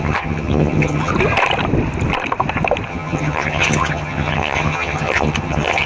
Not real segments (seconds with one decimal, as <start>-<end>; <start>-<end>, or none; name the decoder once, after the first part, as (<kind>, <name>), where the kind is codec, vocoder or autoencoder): 0.0-1.1 (vocoder, HiFi-GAN); 2.9-5.9